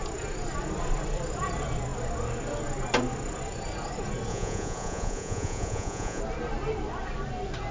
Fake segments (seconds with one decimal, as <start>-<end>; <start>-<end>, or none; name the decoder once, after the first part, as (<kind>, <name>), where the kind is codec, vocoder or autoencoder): 4.3-6.2 (vocoder, Vocos)